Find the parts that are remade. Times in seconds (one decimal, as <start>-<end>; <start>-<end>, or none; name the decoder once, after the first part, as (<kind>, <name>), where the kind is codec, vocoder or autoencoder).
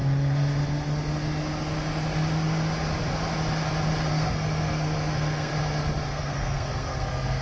4.1-5.5 (codec, SNAC); 6.1-7.4